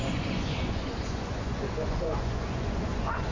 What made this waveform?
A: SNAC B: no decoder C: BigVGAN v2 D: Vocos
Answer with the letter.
D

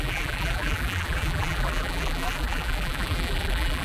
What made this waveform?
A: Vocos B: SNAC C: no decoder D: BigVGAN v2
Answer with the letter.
D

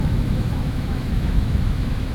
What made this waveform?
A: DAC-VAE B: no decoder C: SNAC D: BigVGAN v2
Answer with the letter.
A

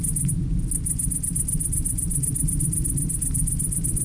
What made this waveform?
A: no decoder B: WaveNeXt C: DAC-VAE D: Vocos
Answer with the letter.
A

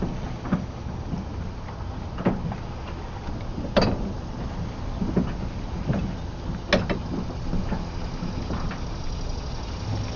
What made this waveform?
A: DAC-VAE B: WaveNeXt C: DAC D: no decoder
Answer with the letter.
D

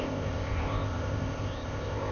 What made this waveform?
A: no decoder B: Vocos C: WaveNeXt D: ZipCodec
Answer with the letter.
D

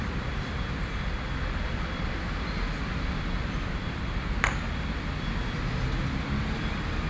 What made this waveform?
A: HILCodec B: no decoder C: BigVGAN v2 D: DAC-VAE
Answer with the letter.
B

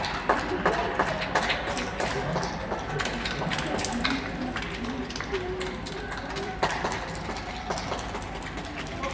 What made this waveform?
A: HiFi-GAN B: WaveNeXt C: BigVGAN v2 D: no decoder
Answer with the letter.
D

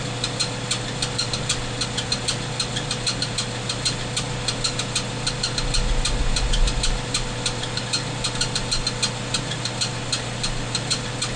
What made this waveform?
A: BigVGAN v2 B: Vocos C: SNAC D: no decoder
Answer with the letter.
D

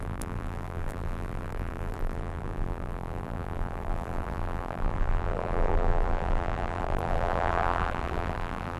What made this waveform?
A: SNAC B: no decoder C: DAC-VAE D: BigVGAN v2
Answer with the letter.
D